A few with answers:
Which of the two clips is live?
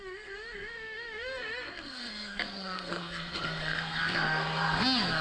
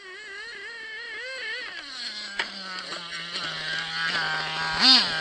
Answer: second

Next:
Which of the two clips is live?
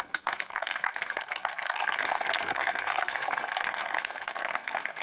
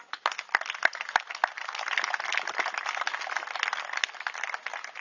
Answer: second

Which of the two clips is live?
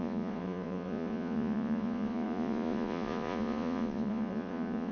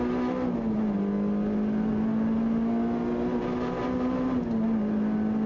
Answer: second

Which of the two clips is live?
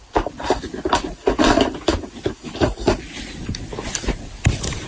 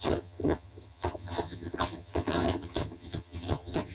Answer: first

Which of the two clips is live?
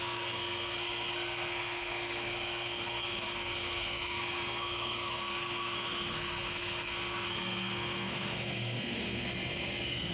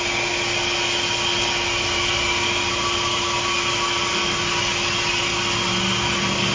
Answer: second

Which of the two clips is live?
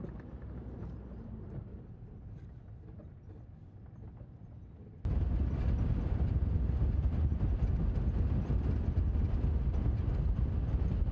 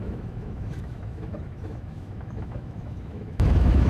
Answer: first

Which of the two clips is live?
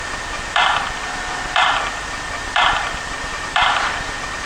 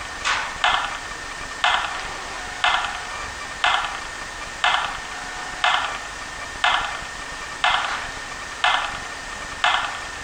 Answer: second